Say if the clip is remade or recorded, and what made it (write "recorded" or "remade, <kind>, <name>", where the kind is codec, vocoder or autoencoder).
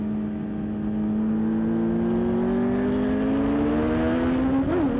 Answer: recorded